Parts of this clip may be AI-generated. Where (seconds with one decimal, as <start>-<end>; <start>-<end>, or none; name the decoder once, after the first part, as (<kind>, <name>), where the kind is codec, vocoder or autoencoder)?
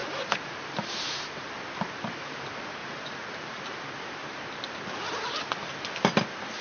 0.0-1.5 (vocoder, BigVGAN v2); 2.8-3.8